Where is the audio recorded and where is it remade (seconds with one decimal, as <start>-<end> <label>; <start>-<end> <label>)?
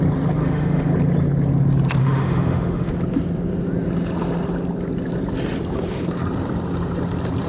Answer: 0.0-0.4 recorded; 0.4-0.9 remade; 0.9-2.0 recorded; 2.0-2.9 remade; 2.9-7.5 recorded